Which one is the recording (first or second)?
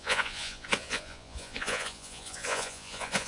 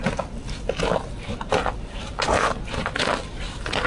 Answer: second